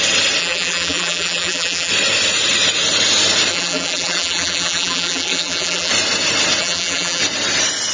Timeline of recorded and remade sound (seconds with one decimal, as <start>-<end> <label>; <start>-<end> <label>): 0.0-0.4 recorded; 0.4-1.9 remade; 1.9-3.5 recorded; 3.5-5.9 remade; 5.9-6.6 recorded; 6.6-7.2 remade; 7.2-7.9 recorded